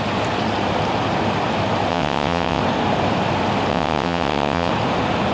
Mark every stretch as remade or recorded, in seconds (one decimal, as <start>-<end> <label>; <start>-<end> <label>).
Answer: 0.0-1.9 recorded; 1.9-2.6 remade; 2.6-3.7 recorded; 3.7-4.7 remade; 4.7-5.3 recorded